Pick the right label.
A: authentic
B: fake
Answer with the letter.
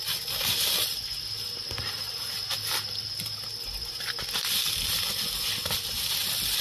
A